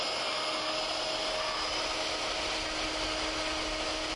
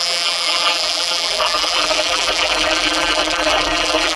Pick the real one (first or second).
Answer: first